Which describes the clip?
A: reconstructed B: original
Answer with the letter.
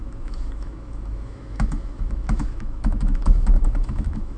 A